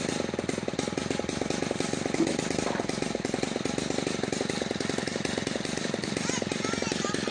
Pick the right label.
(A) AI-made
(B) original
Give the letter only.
B